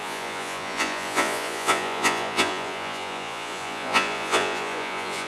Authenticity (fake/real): fake